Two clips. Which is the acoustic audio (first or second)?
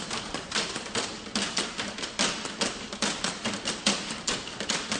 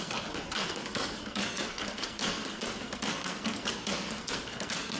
first